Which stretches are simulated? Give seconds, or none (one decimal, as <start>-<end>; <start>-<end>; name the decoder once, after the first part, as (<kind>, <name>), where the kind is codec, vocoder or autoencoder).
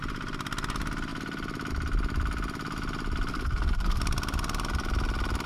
3.3-4.0 (codec, SNAC)